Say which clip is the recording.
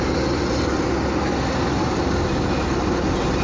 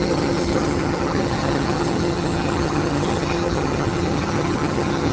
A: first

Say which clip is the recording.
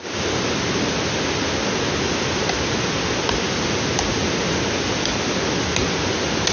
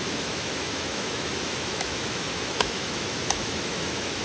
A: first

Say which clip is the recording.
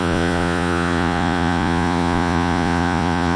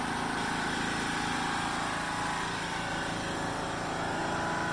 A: second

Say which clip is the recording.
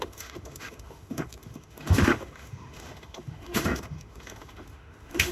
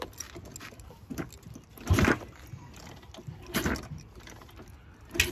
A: second